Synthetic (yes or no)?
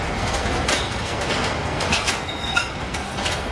yes